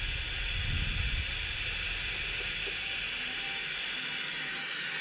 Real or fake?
real